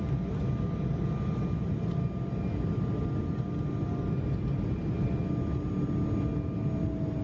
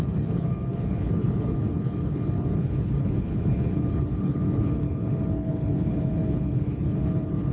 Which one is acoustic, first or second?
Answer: first